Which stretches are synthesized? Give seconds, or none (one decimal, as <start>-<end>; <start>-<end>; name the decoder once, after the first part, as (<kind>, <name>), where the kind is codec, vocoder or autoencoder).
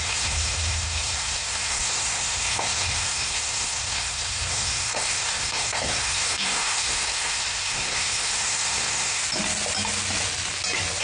0.0-9.2 (codec, SNAC)